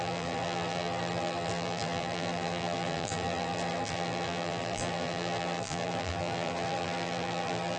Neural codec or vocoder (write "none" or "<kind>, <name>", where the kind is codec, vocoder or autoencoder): vocoder, BigVGAN v2